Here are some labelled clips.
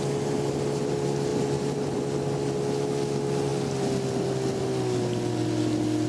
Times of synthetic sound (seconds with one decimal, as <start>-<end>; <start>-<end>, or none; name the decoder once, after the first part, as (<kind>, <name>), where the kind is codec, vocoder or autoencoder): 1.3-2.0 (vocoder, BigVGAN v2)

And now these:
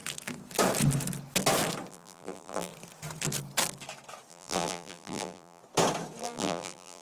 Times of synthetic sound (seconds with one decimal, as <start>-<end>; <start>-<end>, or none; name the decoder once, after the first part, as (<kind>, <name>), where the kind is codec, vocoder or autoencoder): 1.9-2.7 (vocoder, BigVGAN v2); 4.3-5.6; 6.2-7.0

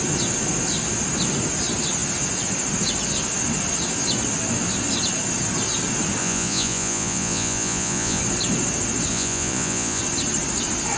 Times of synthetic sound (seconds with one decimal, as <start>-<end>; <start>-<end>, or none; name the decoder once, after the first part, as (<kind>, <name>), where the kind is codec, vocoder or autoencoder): 6.2-8.2 (vocoder, Vocos); 9.1-10.0